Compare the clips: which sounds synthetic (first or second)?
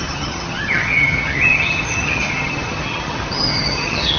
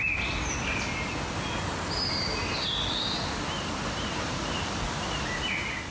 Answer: first